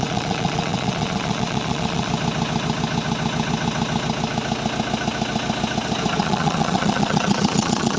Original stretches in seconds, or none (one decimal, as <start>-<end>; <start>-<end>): 2.1-6.2